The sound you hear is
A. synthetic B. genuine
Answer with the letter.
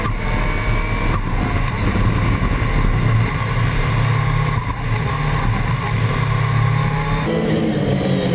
B